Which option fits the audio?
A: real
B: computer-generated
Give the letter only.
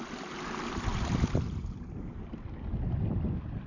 A